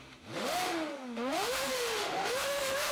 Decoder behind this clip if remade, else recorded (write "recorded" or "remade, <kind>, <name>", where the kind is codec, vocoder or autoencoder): remade, autoencoder, DAC-VAE